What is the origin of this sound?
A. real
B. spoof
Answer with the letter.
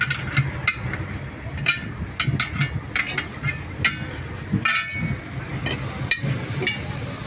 A